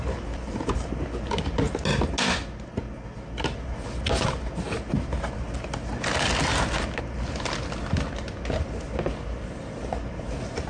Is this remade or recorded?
recorded